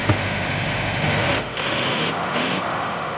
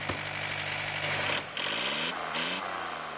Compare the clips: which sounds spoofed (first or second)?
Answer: first